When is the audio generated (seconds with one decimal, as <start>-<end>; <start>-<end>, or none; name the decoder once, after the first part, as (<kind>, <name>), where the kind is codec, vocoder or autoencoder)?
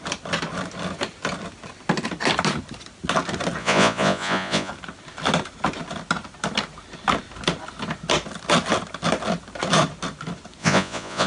3.6-4.7 (vocoder, Vocos); 10.6-11.3